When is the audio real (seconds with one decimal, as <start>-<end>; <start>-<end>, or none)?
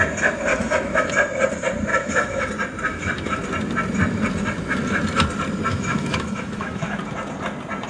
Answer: 0.0-0.5; 1.1-1.9; 2.5-2.9; 3.4-5.7; 7.0-7.9